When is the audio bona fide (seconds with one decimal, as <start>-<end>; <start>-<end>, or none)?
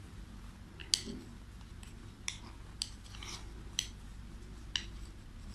0.0-5.5